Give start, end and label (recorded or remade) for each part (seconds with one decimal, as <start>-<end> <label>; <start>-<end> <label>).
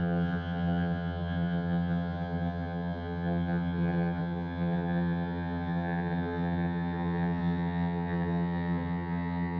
0.0-9.6 remade